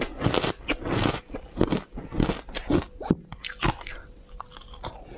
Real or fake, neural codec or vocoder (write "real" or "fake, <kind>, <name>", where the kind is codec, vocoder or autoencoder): real